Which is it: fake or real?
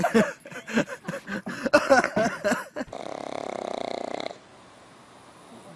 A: real